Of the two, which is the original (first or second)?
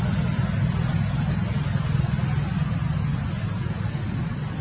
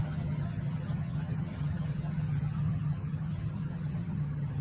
first